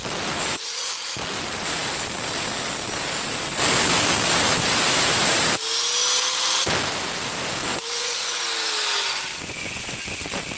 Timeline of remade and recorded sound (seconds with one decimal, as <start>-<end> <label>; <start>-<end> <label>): 0.0-7.7 recorded; 7.7-8.4 remade; 8.4-9.3 recorded; 9.3-10.2 remade; 10.2-10.6 recorded